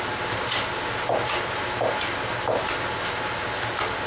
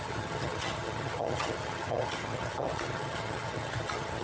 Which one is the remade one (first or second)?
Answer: second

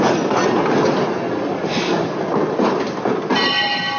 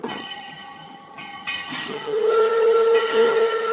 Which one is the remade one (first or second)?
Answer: second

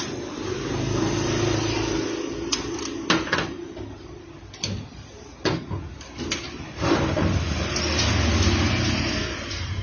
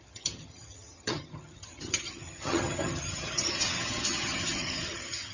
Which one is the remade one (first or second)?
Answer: second